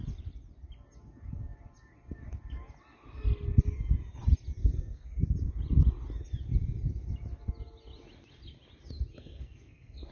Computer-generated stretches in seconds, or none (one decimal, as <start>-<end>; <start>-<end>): 4.6-5.2; 9.1-10.1